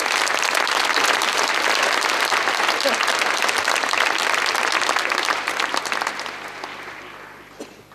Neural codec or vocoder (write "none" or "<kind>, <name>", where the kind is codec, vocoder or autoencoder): none